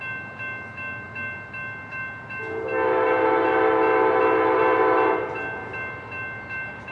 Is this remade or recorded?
recorded